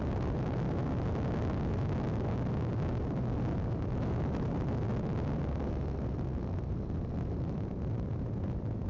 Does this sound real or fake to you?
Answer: real